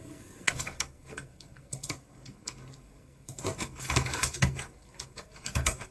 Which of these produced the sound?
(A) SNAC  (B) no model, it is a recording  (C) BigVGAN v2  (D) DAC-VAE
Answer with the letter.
A